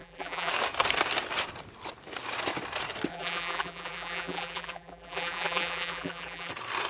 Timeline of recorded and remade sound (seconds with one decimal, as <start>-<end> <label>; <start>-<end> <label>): 0.0-0.5 remade; 0.5-3.1 recorded; 3.1-6.5 remade; 6.5-6.9 recorded